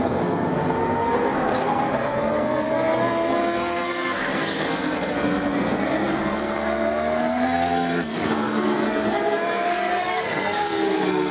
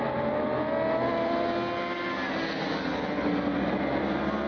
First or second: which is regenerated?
first